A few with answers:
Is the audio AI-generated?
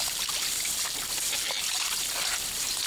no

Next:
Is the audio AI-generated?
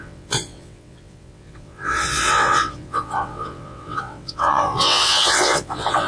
yes